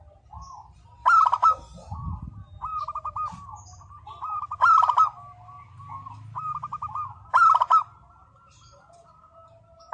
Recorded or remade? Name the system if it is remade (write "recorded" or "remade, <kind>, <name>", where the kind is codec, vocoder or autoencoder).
recorded